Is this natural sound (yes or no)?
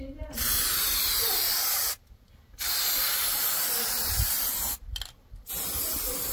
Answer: yes